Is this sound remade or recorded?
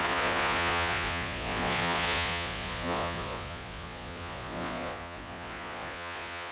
remade